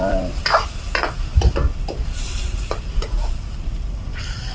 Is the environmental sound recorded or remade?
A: remade